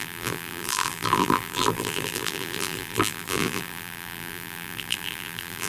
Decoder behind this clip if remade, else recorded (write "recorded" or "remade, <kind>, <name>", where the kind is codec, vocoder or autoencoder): remade, vocoder, BigVGAN v2